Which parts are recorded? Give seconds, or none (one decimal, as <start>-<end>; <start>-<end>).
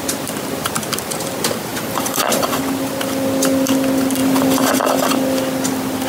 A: 0.0-1.7; 2.6-6.1